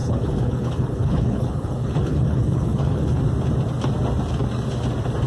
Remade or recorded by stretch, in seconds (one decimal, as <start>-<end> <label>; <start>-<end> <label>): 0.0-3.2 remade; 3.2-5.3 recorded